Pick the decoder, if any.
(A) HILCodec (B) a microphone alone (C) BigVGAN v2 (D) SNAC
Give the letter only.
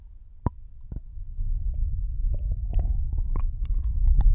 B